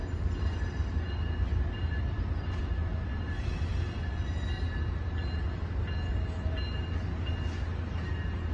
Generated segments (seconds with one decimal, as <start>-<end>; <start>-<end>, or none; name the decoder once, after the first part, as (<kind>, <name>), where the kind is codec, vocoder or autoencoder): none